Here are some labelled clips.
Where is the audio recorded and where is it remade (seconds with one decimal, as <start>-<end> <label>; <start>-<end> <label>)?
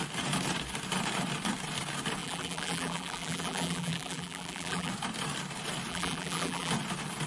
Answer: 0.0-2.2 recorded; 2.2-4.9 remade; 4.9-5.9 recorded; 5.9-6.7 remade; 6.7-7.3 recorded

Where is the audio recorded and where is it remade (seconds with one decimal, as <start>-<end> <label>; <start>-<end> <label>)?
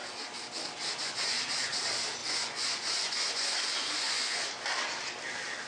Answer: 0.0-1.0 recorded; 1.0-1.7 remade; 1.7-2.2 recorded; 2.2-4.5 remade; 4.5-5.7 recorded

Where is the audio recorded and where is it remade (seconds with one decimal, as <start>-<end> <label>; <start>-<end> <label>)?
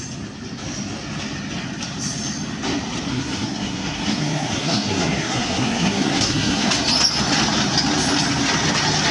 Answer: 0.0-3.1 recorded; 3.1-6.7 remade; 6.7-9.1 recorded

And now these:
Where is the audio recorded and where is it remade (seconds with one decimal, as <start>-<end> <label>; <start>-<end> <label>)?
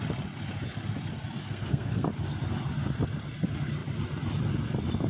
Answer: 0.0-1.4 recorded; 1.4-2.1 remade; 2.1-5.1 recorded